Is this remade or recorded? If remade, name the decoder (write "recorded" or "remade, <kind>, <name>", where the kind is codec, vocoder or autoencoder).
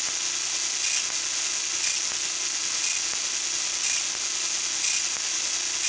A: recorded